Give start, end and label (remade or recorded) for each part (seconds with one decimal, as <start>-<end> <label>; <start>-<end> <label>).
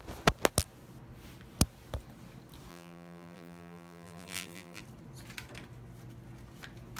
0.0-2.7 recorded; 2.7-4.8 remade; 4.8-7.0 recorded